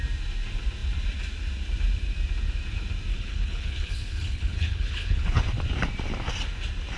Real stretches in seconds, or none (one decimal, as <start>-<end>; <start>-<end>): 0.0-3.1; 5.4-7.0